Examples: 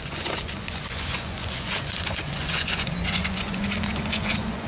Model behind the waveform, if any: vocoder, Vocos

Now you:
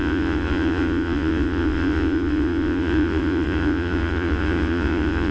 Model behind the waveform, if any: vocoder, Vocos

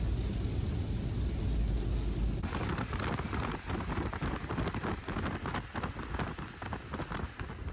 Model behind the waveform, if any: none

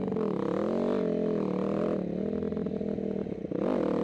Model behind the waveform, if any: none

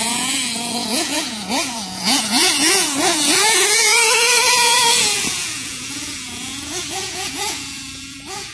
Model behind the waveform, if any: vocoder, Vocos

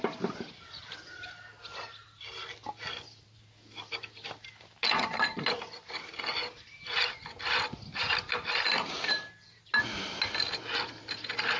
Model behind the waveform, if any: none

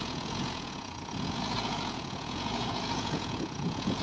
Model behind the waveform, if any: vocoder, Vocos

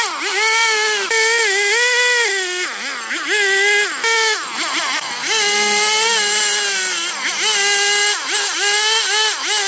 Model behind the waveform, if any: none